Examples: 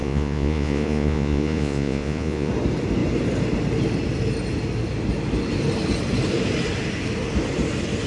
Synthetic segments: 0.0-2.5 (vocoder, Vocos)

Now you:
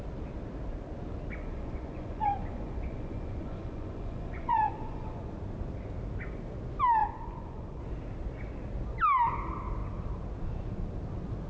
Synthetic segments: 1.4-5.2 (vocoder, Vocos); 7.0-7.8

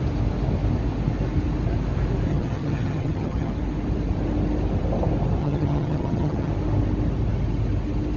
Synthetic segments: 2.3-3.5 (vocoder, HiFi-GAN); 5.4-6.5

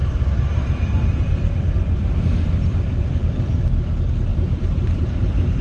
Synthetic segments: 0.0-1.6 (vocoder, BigVGAN v2); 4.3-5.6

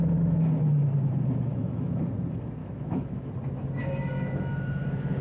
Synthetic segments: 1.5-2.0 (autoencoder, DAC-VAE); 2.6-3.3

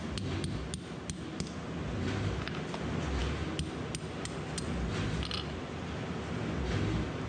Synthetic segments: none